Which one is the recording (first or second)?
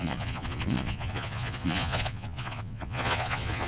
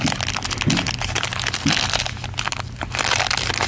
second